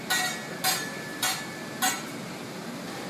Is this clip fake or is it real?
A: real